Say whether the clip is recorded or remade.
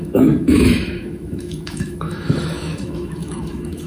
remade